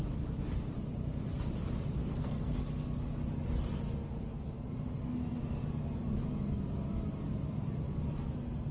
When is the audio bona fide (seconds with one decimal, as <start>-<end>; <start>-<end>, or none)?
0.0-2.0; 2.6-8.7